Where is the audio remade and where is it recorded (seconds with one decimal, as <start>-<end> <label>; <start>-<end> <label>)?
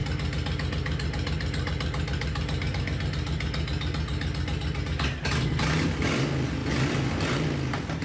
0.0-8.0 recorded